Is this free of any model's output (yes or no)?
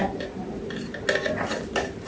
yes